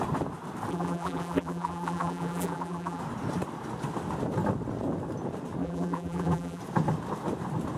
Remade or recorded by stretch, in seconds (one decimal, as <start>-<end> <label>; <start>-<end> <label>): 0.0-0.7 recorded; 0.7-3.0 remade; 3.0-5.6 recorded; 5.6-6.6 remade; 6.6-7.8 recorded